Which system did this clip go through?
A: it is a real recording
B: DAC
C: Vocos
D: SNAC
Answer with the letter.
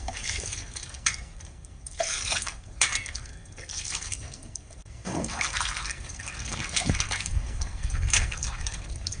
D